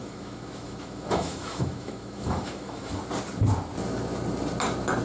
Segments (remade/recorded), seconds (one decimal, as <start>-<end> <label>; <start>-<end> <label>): 0.0-3.0 remade; 3.0-5.0 recorded